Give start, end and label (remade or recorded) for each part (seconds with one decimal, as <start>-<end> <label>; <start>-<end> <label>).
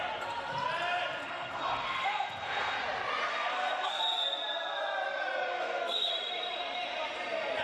0.0-1.2 recorded; 1.2-2.8 remade; 2.8-3.3 recorded; 3.3-4.0 remade; 4.0-5.5 recorded; 5.5-6.1 remade; 6.1-7.6 recorded